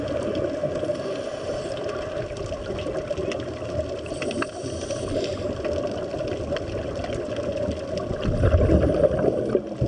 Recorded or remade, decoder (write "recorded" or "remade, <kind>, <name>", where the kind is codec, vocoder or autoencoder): recorded